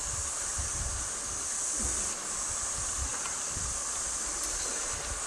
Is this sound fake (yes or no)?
no